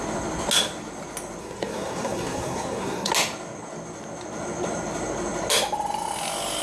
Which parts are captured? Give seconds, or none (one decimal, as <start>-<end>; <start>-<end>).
0.0-1.4; 3.1-6.6